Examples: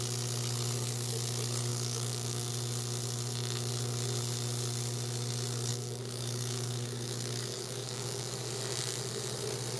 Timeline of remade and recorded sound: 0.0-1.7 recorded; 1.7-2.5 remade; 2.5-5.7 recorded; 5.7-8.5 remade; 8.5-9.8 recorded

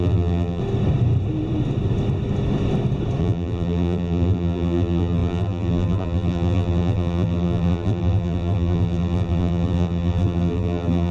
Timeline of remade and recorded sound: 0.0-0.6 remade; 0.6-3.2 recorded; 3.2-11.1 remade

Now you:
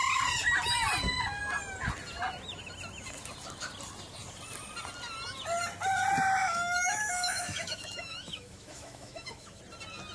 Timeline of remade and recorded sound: 0.0-6.4 recorded; 6.4-9.6 remade; 9.6-10.1 recorded